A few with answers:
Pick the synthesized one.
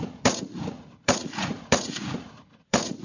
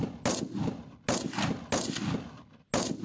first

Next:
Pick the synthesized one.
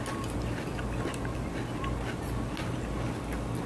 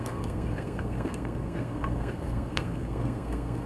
second